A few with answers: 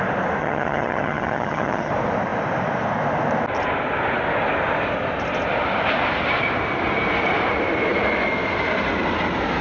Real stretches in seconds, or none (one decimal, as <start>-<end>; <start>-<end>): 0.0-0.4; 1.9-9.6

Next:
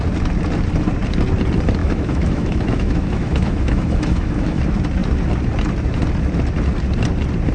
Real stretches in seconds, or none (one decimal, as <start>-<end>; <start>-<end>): 0.0-1.8; 4.6-7.5

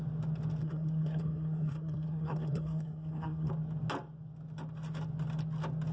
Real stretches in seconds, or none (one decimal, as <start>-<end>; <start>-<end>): 0.0-0.6; 3.5-5.9